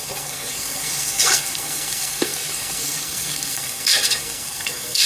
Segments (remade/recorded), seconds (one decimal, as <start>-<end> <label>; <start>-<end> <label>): 0.0-5.1 remade